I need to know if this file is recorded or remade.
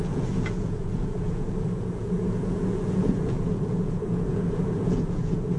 remade